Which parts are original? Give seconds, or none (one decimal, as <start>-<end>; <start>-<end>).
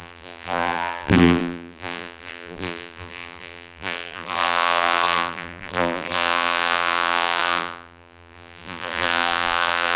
none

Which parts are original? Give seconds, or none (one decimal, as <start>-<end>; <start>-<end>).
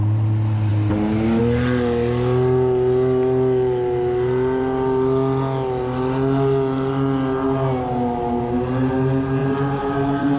0.0-9.4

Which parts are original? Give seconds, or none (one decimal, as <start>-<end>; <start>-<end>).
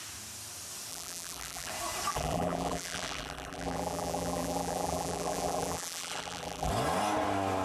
0.0-0.9; 1.7-2.1; 6.7-7.6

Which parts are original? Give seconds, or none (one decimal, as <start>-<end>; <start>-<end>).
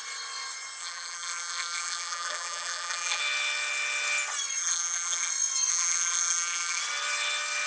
0.0-0.8; 3.2-4.6; 5.3-5.7; 6.8-7.7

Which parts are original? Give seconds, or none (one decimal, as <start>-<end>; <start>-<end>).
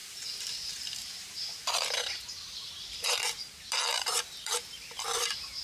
3.4-3.9; 5.1-5.6